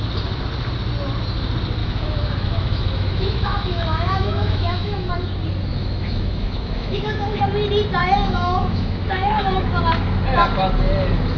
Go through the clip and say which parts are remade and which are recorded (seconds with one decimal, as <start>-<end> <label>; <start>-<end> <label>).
0.0-1.8 recorded; 1.8-5.1 remade; 5.1-5.7 recorded; 5.7-7.4 remade; 7.4-8.0 recorded; 8.0-9.8 remade; 9.8-11.4 recorded